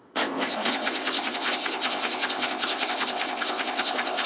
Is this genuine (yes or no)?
no